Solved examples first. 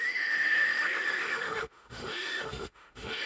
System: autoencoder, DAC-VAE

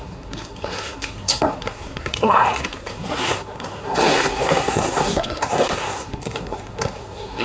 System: codec, SNAC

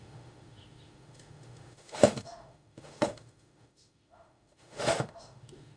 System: autoencoder, DAC-VAE